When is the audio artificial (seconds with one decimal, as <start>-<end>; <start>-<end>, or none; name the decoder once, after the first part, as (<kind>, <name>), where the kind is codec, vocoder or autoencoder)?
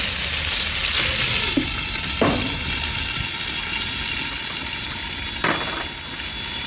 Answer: none